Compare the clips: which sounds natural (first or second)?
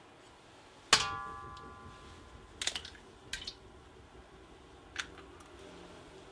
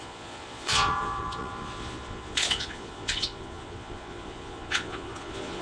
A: first